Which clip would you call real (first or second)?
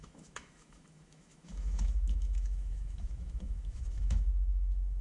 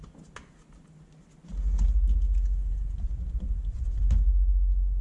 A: second